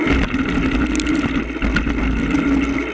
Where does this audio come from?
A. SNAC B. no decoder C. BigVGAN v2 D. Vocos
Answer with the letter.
B